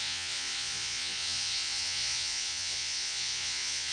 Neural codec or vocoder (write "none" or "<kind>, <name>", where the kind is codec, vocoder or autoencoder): vocoder, Vocos